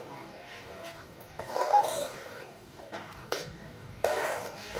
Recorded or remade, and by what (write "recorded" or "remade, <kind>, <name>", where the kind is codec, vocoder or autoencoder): remade, codec, DAC